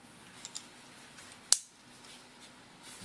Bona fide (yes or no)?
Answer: yes